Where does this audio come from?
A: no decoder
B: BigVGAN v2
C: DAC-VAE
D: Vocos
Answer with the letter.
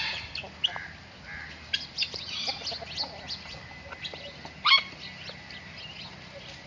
A